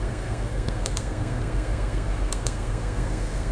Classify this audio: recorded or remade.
remade